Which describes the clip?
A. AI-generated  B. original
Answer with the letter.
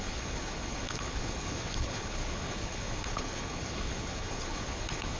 A